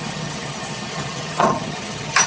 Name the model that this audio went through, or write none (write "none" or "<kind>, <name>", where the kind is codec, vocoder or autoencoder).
vocoder, HiFi-GAN